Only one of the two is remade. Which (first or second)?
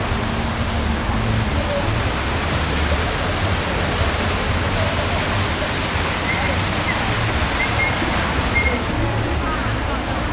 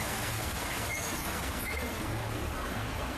second